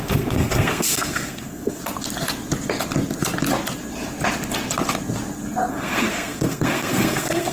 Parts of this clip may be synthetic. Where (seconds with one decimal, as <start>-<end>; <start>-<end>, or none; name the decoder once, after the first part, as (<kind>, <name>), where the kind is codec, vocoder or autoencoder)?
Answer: 0.0-1.8 (codec, SNAC); 5.7-7.5